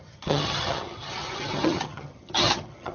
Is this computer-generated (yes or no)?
yes